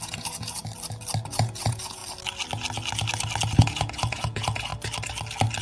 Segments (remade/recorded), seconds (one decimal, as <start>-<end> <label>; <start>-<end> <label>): 0.0-0.6 remade; 0.6-1.3 recorded; 1.3-2.0 remade; 2.0-3.6 recorded; 3.6-4.7 remade; 4.7-5.6 recorded